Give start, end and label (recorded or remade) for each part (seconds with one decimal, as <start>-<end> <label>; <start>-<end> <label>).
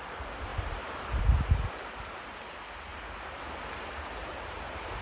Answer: 0.0-5.0 recorded